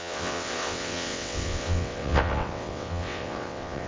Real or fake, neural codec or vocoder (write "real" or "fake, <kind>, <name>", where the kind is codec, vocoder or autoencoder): fake, vocoder, WaveNeXt